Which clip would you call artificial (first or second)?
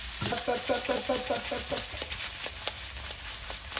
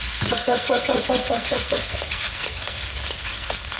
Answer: second